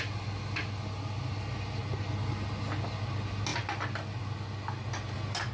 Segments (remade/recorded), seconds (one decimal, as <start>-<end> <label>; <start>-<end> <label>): 0.0-5.5 recorded